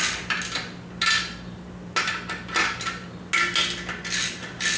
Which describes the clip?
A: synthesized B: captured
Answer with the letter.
B